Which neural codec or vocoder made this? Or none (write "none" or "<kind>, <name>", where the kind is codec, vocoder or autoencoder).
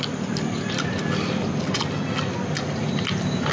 none